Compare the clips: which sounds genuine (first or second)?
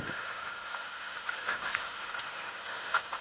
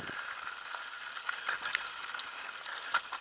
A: second